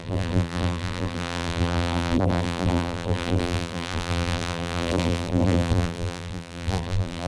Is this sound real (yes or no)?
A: no